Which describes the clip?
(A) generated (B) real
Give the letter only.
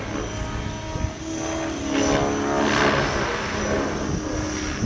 B